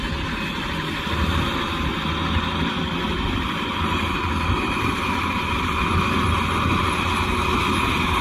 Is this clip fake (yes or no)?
no